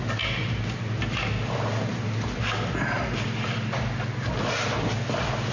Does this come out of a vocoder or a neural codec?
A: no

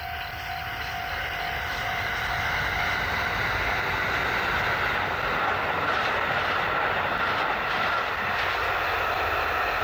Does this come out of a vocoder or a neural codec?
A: no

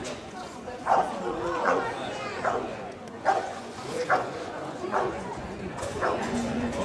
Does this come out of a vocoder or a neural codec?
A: yes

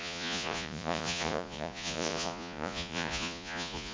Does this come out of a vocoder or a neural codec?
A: yes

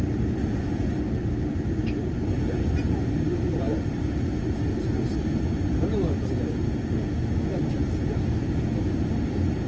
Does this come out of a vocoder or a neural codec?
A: no